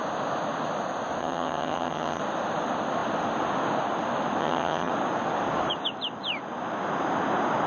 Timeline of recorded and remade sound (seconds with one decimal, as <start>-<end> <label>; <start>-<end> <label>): 0.0-1.2 recorded; 1.2-2.2 remade; 2.2-4.4 recorded; 4.4-4.9 remade; 4.9-7.7 recorded